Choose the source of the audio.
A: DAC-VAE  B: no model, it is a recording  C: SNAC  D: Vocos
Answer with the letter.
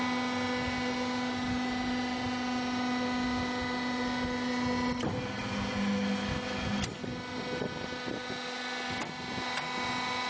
B